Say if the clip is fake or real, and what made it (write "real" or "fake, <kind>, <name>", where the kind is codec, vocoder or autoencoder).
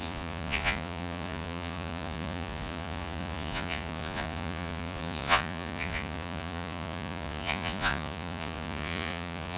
fake, vocoder, Vocos